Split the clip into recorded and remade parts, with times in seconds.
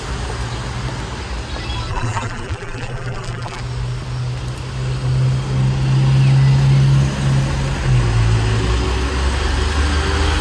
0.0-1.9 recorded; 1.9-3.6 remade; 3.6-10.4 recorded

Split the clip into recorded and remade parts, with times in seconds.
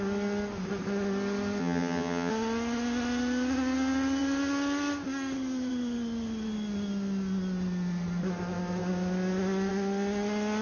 0.0-1.6 recorded; 1.6-2.3 remade; 2.3-10.6 recorded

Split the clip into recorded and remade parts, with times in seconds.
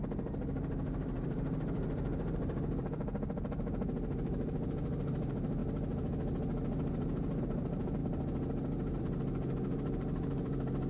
0.0-5.6 remade; 5.6-7.4 recorded; 7.4-8.0 remade; 8.0-9.0 recorded; 9.0-10.9 remade